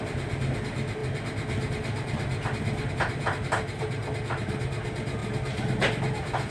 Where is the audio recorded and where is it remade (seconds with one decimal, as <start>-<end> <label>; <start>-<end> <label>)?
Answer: 0.0-6.5 recorded